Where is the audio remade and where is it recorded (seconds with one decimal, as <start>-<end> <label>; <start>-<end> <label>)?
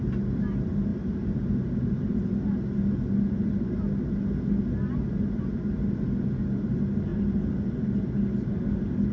0.0-0.9 recorded; 0.9-1.5 remade; 1.5-7.1 recorded; 7.1-8.0 remade; 8.0-9.1 recorded